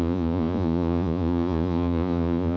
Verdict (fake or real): fake